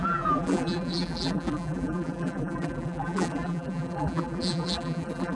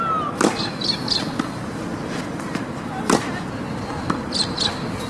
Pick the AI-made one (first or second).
first